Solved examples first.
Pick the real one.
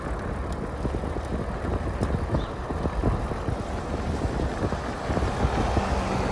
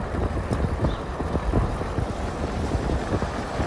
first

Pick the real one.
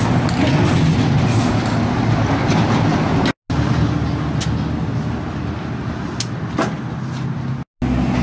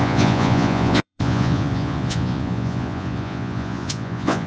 first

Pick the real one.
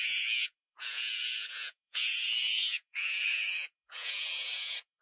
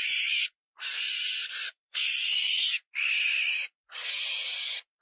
second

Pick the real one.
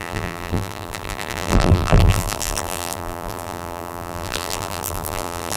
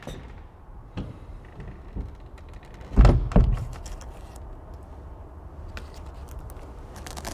second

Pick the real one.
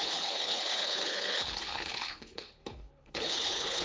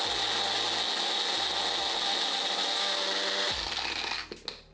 second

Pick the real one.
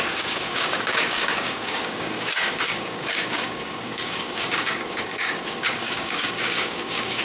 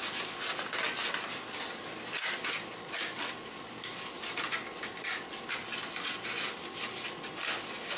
second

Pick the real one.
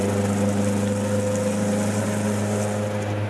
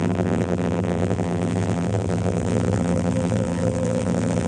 first